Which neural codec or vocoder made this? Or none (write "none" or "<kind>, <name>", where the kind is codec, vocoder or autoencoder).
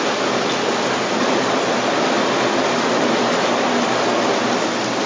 none